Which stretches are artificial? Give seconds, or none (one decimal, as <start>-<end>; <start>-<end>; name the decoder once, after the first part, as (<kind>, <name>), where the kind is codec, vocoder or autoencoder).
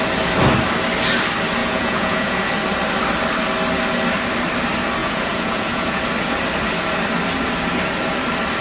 1.6-2.4 (vocoder, Vocos); 5.0-6.0